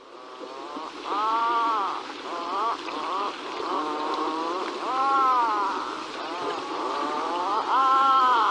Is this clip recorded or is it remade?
remade